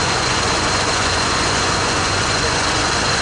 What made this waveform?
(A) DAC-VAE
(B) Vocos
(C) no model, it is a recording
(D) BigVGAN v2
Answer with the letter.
B